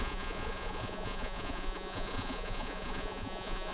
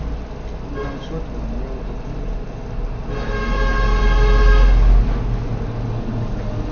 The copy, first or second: first